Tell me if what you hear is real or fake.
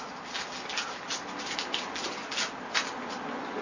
real